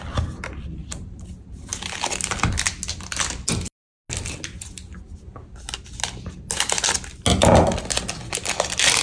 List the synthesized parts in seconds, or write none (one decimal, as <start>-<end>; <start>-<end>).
none